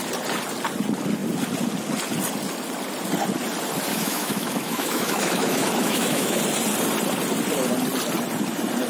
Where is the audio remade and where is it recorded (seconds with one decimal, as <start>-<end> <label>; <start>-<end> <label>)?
0.0-3.9 recorded; 3.9-6.4 remade; 6.4-8.9 recorded